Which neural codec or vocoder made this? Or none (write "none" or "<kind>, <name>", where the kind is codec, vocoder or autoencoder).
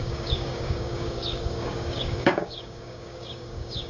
codec, DAC